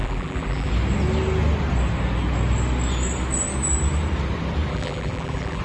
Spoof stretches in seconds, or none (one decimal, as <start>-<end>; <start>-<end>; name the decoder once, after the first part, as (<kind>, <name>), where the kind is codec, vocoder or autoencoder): 0.0-0.7 (vocoder, BigVGAN v2); 4.7-5.6